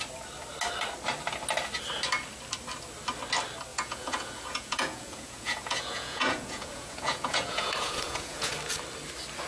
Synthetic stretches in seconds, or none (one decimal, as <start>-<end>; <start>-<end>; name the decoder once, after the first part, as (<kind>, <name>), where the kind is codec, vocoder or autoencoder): 3.7-8.5 (vocoder, Vocos)